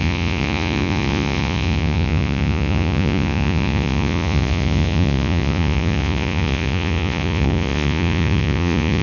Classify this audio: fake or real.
fake